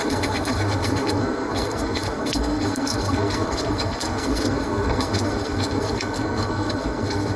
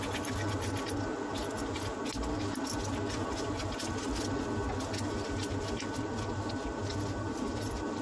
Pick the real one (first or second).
second